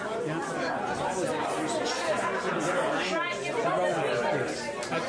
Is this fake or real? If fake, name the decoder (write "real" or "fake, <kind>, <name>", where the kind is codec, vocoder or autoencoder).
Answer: real